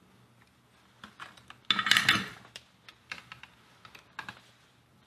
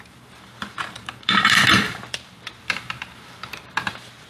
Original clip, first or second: first